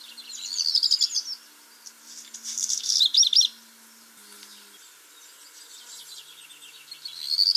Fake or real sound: real